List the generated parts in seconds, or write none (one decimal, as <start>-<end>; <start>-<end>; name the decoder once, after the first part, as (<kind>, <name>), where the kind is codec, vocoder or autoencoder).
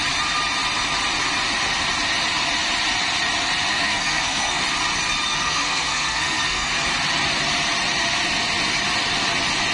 3.7-4.6 (codec, SNAC); 5.3-6.7